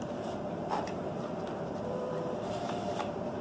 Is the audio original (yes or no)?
no